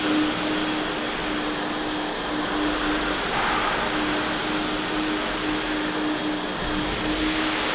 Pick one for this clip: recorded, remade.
recorded